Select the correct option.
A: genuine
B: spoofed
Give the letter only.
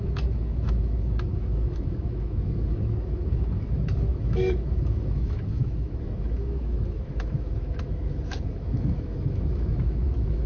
B